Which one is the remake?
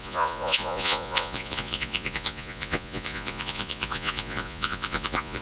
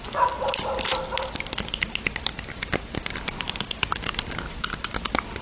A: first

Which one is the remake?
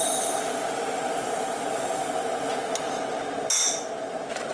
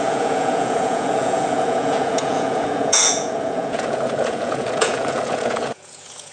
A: second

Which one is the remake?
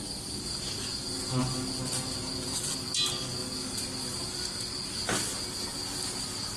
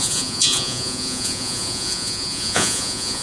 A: second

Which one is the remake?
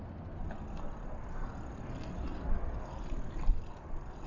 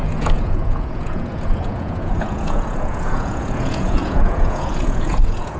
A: second